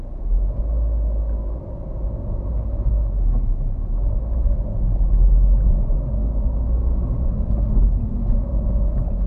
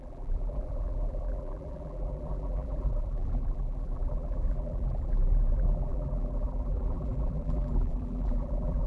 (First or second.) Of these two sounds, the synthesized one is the second